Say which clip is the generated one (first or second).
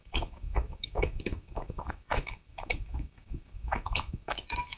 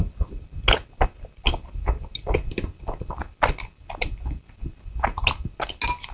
first